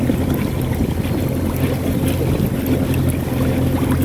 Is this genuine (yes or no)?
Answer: yes